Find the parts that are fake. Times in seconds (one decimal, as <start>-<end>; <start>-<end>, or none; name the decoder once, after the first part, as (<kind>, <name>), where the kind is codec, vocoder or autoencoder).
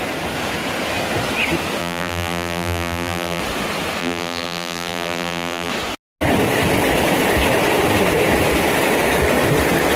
1.8-3.4 (vocoder, BigVGAN v2); 4.0-5.7